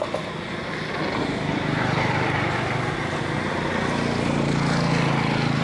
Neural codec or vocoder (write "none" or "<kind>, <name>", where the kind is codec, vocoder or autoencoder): none